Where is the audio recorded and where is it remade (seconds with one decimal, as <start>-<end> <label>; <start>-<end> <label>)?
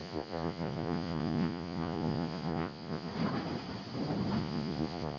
0.0-3.1 remade; 3.1-4.4 recorded; 4.4-5.2 remade